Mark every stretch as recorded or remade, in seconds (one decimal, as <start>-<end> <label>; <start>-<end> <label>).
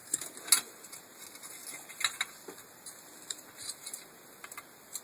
0.0-5.0 recorded